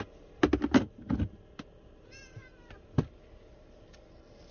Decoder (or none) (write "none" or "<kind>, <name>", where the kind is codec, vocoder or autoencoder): none